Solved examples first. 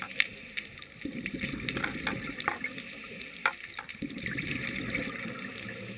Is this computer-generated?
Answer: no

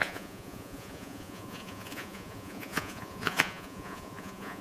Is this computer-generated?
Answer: yes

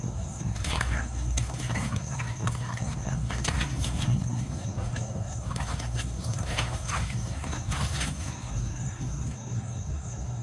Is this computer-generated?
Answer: yes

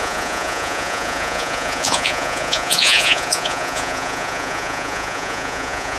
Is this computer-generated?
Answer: yes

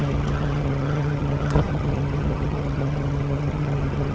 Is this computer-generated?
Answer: yes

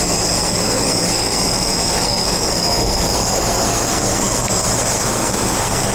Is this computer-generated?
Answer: yes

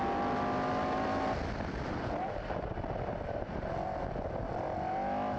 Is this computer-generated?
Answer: no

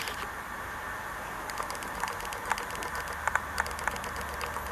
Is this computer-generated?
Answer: no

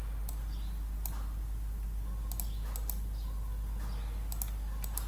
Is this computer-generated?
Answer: no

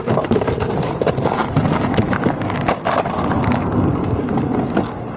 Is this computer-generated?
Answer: no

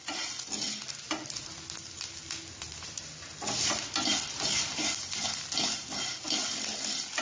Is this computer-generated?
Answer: no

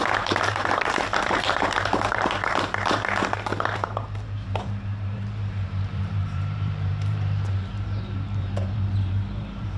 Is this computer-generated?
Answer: yes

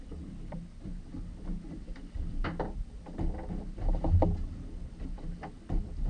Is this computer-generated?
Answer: no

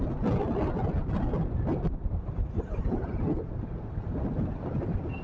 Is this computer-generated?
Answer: no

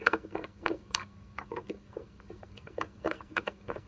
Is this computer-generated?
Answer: yes